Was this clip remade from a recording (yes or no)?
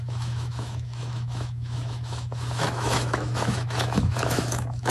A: yes